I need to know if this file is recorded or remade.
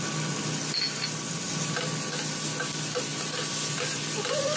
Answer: recorded